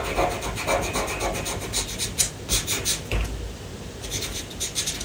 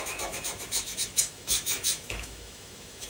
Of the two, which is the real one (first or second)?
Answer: first